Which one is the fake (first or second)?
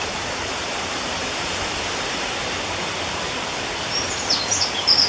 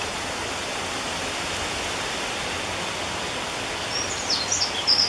first